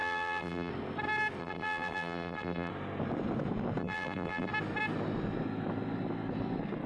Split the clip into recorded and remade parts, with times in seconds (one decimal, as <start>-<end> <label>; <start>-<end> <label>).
0.0-0.7 remade; 0.7-1.4 recorded; 1.4-2.7 remade; 2.7-3.8 recorded; 3.8-4.5 remade; 4.5-6.9 recorded